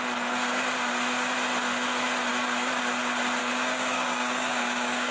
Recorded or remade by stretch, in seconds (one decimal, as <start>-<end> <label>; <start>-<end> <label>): 0.0-3.4 recorded; 3.4-5.1 remade

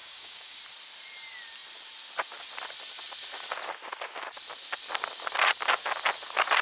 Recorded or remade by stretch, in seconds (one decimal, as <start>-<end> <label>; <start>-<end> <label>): 0.0-0.6 remade; 0.6-6.6 recorded

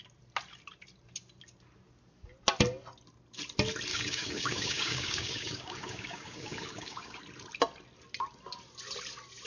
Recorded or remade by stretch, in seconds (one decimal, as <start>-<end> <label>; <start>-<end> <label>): 0.0-3.9 recorded; 3.9-7.2 remade; 7.2-9.5 recorded